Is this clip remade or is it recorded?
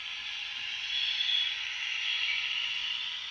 remade